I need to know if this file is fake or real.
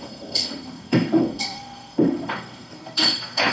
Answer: fake